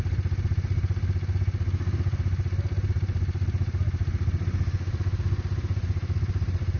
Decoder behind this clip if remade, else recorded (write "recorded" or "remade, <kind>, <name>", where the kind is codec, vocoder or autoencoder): recorded